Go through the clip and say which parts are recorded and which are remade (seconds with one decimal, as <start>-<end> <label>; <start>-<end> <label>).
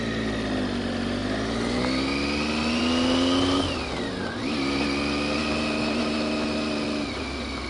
0.0-7.7 recorded